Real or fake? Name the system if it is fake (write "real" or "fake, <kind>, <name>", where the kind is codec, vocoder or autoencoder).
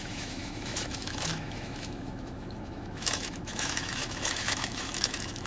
fake, autoencoder, DAC-VAE